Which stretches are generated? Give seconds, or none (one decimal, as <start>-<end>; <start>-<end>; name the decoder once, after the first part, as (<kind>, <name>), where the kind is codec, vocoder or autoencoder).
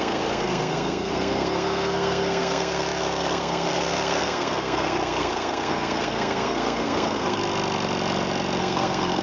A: 0.0-7.4 (codec, SNAC); 8.6-9.2